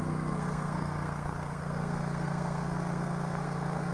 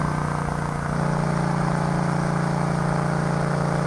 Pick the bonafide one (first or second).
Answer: second